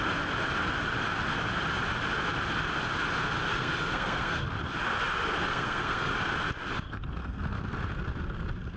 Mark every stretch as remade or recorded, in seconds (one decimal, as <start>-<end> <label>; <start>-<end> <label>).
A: 0.0-3.5 recorded; 3.5-4.5 remade; 4.5-5.5 recorded; 5.5-6.1 remade; 6.1-7.2 recorded; 7.2-7.7 remade; 7.7-8.8 recorded